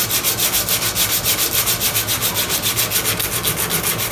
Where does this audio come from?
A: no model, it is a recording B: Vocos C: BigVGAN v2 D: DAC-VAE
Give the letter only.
A